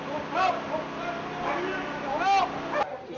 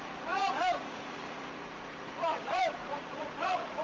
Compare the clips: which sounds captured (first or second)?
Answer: first